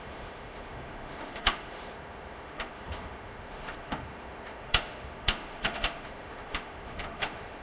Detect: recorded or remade remade